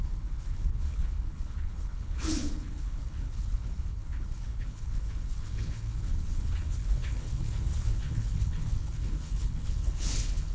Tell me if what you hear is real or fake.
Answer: fake